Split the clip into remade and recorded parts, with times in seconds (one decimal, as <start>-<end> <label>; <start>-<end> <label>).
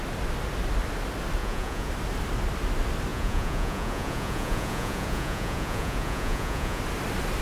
0.0-1.4 recorded; 1.4-1.9 remade; 1.9-3.1 recorded; 3.1-6.8 remade; 6.8-7.4 recorded